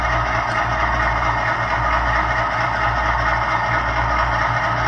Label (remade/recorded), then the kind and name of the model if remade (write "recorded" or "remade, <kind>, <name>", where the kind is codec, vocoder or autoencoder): recorded